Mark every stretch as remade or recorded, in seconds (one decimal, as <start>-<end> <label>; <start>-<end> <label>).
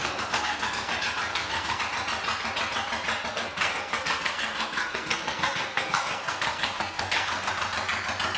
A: 0.0-0.9 remade; 0.9-1.3 recorded; 1.3-1.8 remade; 1.8-3.3 recorded; 3.3-7.5 remade; 7.5-8.4 recorded